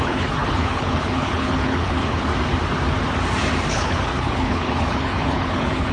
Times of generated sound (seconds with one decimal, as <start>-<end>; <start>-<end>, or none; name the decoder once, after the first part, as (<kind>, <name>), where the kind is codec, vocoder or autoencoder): 0.0-2.3 (codec, HILCodec); 3.7-5.9